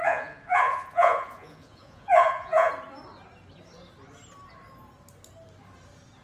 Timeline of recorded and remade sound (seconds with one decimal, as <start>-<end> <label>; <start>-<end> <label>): 0.0-2.7 remade; 2.7-6.2 recorded